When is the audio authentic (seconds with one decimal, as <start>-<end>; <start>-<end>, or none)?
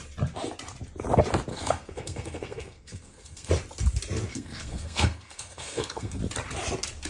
0.0-1.5; 3.5-4.3; 6.2-7.1